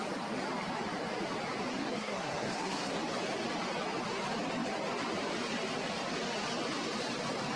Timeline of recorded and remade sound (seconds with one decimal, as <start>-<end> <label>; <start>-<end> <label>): 0.0-1.7 recorded; 1.7-3.0 remade; 3.0-7.6 recorded